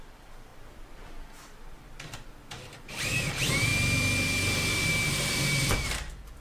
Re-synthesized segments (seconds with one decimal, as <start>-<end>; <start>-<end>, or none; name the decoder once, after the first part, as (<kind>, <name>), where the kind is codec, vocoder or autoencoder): 0.0-3.7 (vocoder, BigVGAN v2); 4.9-6.4